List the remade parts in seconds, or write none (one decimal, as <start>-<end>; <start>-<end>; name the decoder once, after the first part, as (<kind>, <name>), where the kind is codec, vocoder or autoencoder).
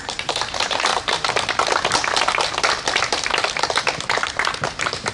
0.0-0.9 (vocoder, BigVGAN v2); 4.0-5.1